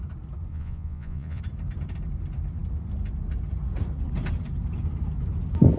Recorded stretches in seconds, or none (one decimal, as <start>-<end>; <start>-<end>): 0.0-0.5; 1.4-5.8